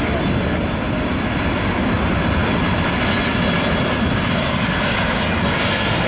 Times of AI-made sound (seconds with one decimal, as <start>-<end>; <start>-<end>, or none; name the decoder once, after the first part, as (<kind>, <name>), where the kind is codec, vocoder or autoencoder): none